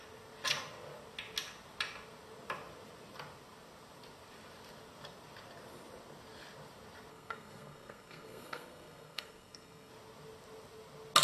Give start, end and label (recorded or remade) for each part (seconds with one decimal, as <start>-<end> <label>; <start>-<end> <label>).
0.0-7.1 recorded; 7.1-9.9 remade; 9.9-11.2 recorded